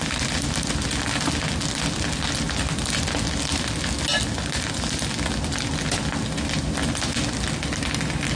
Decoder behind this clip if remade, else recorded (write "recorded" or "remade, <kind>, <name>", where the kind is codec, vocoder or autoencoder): recorded